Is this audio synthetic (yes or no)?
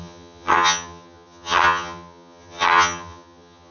yes